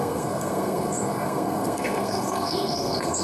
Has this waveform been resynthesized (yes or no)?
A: yes